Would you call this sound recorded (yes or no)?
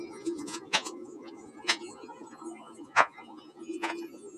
no